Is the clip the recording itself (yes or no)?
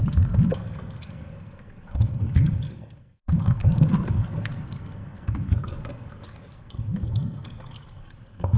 no